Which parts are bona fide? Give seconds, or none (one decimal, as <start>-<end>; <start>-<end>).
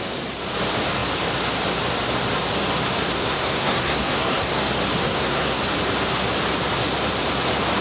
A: 0.0-3.0; 4.6-5.0; 5.6-7.8